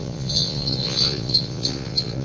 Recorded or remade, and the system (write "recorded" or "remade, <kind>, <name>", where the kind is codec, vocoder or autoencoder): remade, vocoder, Vocos